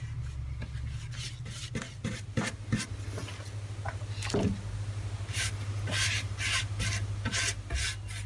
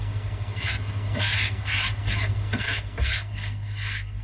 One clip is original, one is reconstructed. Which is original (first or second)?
first